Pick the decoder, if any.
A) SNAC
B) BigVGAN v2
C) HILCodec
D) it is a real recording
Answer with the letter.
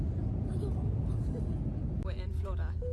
D